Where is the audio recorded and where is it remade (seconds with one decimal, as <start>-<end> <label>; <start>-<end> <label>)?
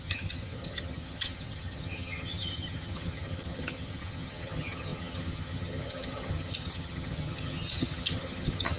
0.0-8.8 remade